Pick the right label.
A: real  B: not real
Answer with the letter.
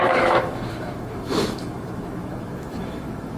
B